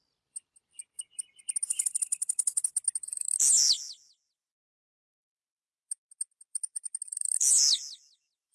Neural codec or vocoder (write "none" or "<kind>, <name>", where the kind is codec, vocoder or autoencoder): none